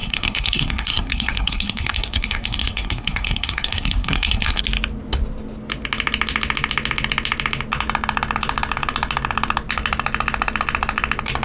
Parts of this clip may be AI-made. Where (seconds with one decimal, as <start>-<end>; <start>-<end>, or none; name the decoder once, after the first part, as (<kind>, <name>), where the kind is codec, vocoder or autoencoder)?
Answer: 0.0-4.6 (codec, SNAC)

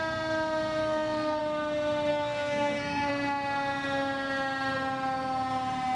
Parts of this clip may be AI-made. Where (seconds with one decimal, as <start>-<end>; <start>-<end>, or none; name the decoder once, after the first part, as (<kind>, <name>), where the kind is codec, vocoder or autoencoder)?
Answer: 0.8-1.4 (codec, SNAC); 2.1-3.1